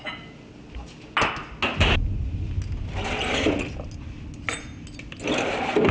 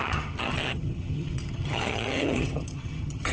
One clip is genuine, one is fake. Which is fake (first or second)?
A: second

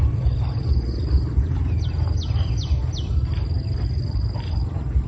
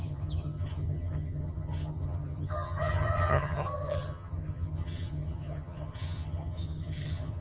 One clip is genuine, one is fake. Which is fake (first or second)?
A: second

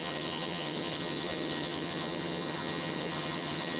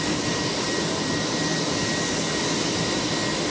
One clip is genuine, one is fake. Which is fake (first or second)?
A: first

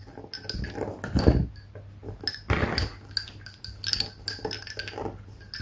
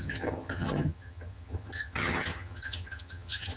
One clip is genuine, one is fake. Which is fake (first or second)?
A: second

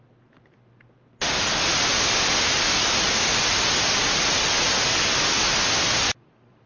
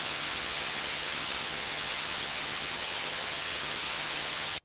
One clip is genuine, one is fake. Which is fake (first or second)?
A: second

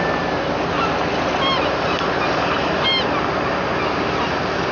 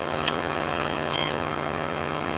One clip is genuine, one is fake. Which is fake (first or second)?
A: second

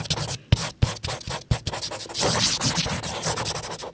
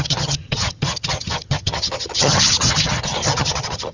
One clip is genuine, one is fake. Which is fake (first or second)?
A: second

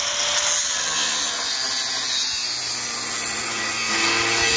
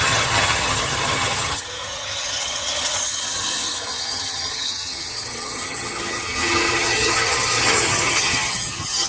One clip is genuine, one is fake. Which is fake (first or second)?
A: second